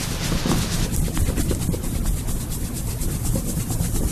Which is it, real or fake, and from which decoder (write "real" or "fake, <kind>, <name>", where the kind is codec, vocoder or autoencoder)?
real